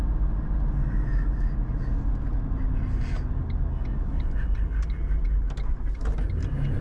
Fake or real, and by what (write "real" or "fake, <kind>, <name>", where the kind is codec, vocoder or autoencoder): real